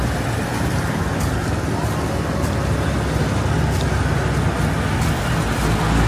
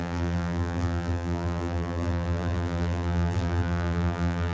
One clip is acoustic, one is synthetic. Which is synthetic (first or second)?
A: second